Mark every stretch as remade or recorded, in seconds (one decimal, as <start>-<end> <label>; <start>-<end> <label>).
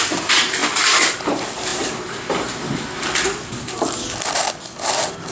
0.0-5.3 remade